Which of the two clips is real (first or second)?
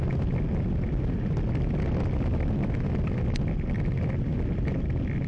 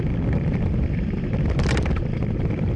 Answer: first